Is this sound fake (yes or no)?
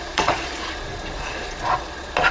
yes